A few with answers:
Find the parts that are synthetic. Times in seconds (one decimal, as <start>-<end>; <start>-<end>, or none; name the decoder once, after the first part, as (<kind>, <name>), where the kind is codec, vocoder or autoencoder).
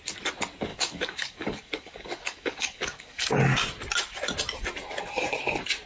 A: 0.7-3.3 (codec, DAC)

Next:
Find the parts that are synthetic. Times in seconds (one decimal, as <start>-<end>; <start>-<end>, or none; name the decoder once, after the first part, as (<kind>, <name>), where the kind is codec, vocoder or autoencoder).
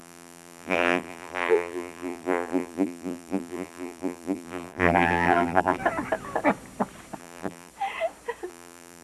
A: 0.0-5.8 (vocoder, BigVGAN v2); 7.2-7.7; 8.5-9.0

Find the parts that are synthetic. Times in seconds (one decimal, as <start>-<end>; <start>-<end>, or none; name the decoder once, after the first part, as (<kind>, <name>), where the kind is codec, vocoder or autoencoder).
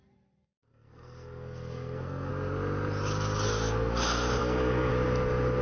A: 0.7-2.3 (codec, SNAC); 4.4-4.9